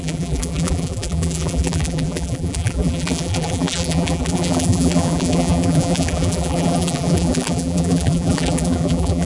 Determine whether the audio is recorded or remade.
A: remade